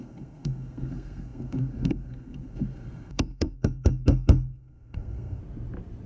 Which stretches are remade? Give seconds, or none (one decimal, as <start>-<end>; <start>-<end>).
0.0-5.4